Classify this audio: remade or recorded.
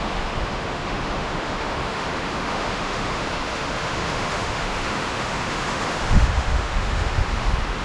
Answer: remade